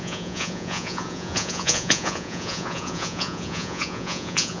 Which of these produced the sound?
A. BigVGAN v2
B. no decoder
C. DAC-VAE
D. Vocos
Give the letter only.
D